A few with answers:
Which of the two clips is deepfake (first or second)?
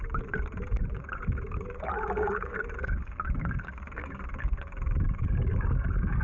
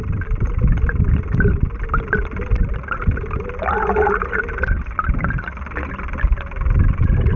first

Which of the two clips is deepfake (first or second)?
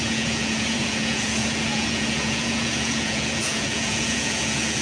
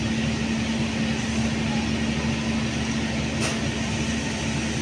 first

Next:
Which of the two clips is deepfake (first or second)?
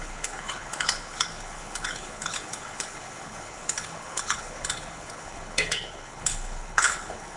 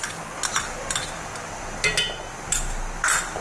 first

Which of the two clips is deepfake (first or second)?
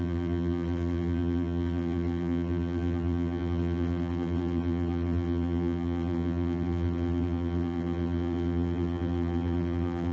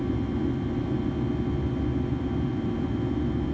first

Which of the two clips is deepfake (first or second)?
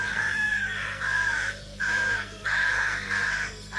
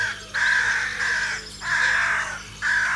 first